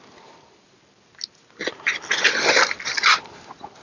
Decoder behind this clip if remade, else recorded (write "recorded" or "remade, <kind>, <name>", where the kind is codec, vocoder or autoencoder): recorded